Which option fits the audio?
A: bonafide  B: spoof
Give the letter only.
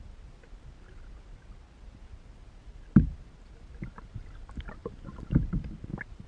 A